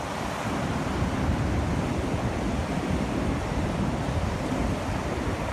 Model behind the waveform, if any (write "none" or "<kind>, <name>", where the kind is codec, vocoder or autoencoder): none